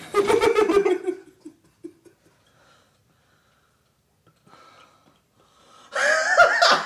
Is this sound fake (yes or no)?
no